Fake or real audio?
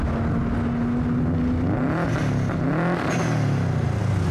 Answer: real